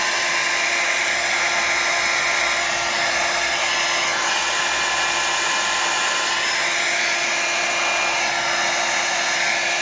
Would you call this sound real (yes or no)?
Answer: yes